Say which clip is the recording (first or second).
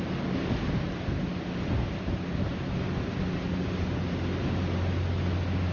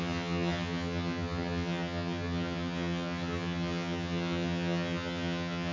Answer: first